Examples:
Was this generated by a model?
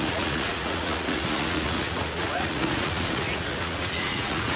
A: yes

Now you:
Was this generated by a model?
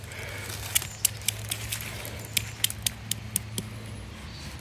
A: no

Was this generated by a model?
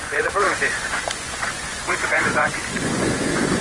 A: yes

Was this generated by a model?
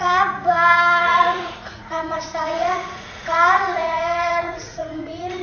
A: yes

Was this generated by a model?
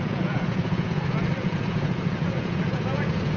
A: yes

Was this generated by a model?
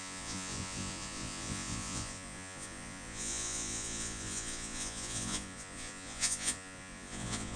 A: yes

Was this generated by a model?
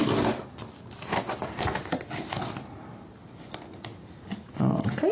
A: no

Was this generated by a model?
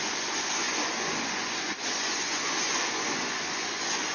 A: yes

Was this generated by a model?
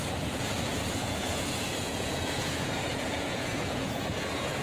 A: yes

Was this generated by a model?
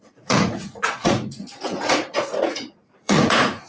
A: yes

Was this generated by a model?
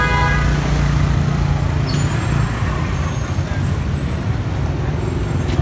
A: no